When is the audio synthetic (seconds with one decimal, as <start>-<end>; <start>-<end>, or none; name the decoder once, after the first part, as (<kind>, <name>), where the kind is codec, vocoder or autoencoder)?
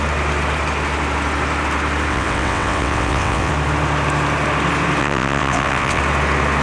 2.1-3.5 (vocoder, WaveNeXt); 5.0-6.0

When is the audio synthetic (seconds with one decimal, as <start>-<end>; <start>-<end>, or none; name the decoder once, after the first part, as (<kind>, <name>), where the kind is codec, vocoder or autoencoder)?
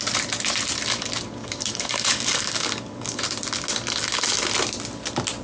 1.4-3.2 (codec, DAC)